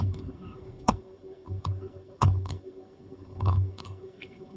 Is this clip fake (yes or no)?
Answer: yes